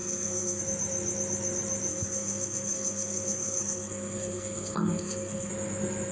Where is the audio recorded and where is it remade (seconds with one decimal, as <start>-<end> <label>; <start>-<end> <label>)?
0.0-0.6 remade; 0.6-1.9 recorded; 1.9-5.5 remade; 5.5-6.1 recorded

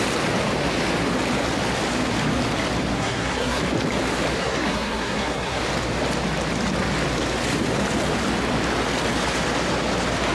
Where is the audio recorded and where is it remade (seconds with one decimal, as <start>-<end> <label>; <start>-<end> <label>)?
0.0-2.9 recorded; 2.9-3.6 remade; 3.6-4.4 recorded; 4.4-5.6 remade; 5.6-10.3 recorded

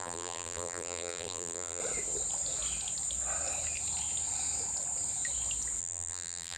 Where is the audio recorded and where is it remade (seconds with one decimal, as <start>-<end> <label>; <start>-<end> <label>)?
0.0-1.8 remade; 1.8-5.8 recorded; 5.8-6.6 remade

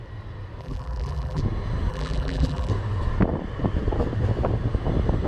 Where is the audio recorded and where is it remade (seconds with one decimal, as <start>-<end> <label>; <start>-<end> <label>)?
0.0-0.6 recorded; 0.6-1.4 remade; 1.4-1.9 recorded; 1.9-2.7 remade; 2.7-5.3 recorded